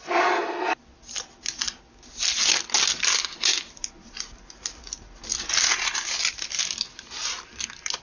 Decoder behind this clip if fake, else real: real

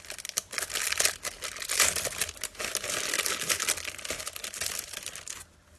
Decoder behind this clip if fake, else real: real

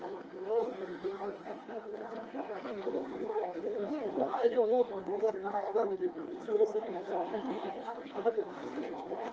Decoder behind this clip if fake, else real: fake, codec, SNAC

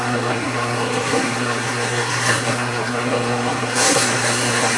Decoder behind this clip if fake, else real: fake, codec, SNAC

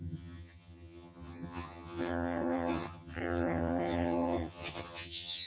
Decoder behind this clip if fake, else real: fake, vocoder, HiFi-GAN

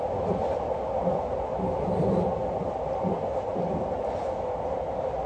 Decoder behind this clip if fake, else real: real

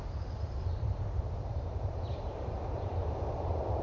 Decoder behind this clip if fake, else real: fake, vocoder, BigVGAN v2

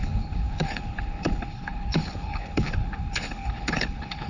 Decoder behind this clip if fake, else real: fake, codec, HILCodec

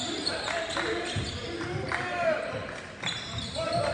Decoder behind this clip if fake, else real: real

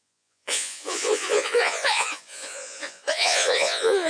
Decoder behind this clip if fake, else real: fake, vocoder, Vocos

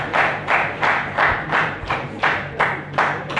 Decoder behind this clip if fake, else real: fake, vocoder, BigVGAN v2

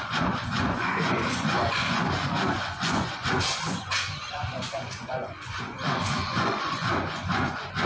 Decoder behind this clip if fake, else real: fake, vocoder, Vocos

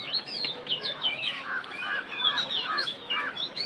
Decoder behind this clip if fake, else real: fake, autoencoder, DAC-VAE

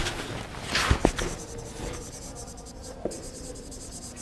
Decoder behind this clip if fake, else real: real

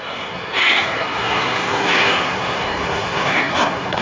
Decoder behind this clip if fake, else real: fake, codec, SNAC